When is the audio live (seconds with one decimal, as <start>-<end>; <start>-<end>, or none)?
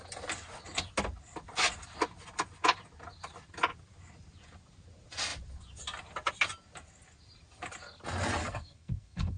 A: 0.0-8.4